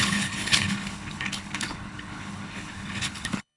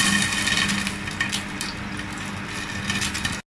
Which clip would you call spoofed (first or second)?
first